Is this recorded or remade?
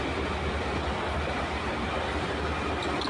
recorded